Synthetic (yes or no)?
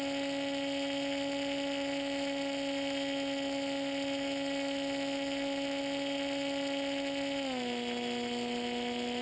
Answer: no